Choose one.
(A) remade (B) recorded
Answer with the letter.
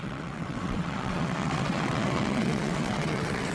A